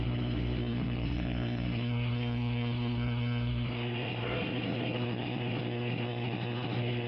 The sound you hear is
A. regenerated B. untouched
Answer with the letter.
A